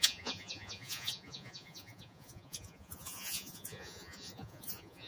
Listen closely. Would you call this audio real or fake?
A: fake